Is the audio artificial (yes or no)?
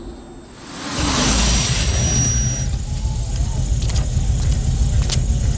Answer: no